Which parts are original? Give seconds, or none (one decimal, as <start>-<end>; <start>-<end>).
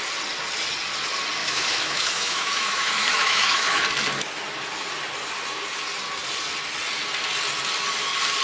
0.0-1.4; 3.8-8.4